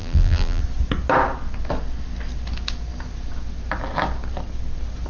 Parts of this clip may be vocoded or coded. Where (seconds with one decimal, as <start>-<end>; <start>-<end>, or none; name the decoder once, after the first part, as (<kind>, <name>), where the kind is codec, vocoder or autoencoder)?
0.0-0.6 (vocoder, BigVGAN v2)